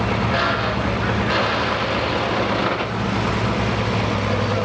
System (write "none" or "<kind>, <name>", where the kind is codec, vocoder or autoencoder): none